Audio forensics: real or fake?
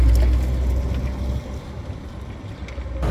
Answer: real